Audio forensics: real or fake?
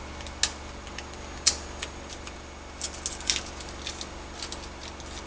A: real